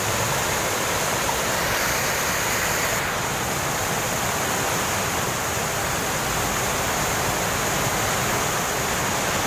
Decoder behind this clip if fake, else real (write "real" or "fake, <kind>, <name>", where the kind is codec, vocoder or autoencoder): real